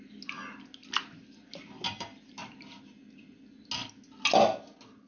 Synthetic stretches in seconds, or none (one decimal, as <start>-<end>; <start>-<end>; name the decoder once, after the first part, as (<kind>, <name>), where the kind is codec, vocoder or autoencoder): none